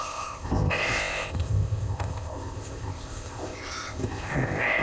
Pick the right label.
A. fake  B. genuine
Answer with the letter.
A